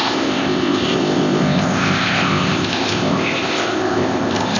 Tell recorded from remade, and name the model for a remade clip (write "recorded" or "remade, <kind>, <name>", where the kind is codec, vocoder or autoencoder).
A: remade, codec, ZipCodec